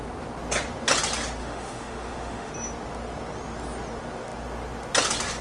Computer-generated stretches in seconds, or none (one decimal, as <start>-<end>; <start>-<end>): 1.4-2.5